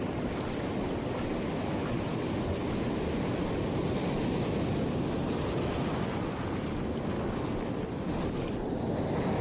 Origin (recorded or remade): recorded